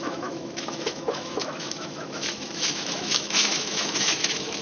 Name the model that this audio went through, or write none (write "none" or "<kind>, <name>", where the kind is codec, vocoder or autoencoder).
autoencoder, DAC-VAE